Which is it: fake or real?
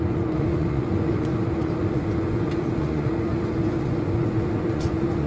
fake